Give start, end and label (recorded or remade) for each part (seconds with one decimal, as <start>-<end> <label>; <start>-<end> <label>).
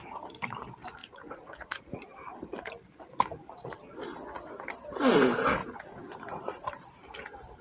0.0-1.0 recorded; 1.0-1.8 remade; 1.8-5.6 recorded; 5.6-6.7 remade; 6.7-7.6 recorded